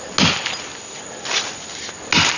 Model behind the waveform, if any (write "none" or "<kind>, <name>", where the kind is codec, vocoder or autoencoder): none